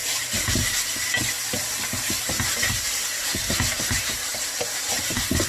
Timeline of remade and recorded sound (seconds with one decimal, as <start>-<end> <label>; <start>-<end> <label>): 0.0-2.7 recorded; 2.7-5.5 remade

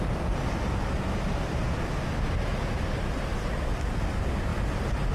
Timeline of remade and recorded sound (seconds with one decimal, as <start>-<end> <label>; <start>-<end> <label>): 0.0-4.5 recorded; 4.5-5.1 remade

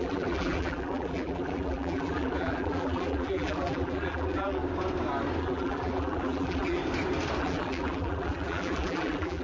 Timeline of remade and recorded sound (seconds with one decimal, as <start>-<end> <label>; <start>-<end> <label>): 0.0-4.6 remade; 4.6-5.4 recorded; 5.4-6.8 remade; 6.8-7.4 recorded; 7.4-9.4 remade

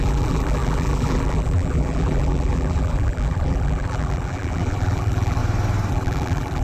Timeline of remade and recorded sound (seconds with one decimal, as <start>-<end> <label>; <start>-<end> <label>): 0.0-5.4 remade; 5.4-5.9 recorded; 5.9-6.6 remade

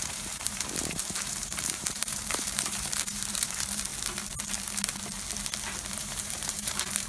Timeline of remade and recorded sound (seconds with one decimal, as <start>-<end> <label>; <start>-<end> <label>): 0.0-3.9 remade; 3.9-5.9 recorded; 5.9-7.1 remade

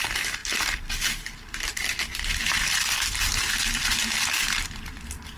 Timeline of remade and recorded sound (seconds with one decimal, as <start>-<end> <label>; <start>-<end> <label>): 0.0-0.4 remade; 0.4-1.0 recorded; 1.0-1.9 remade; 1.9-2.5 recorded; 2.5-5.4 remade